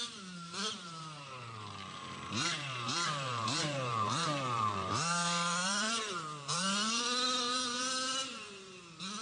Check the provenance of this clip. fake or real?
fake